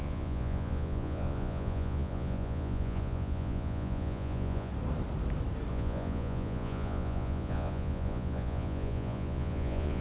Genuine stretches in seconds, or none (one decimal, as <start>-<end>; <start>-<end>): 4.7-5.7